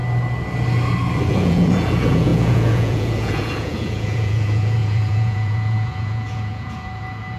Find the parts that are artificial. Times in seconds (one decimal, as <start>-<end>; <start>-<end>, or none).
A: 1.3-7.4